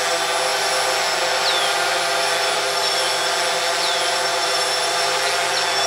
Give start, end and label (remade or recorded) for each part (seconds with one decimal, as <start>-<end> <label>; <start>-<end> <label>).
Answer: 0.0-4.4 recorded; 4.4-5.2 remade; 5.2-5.9 recorded